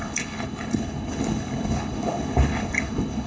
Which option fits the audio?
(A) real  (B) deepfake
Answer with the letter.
B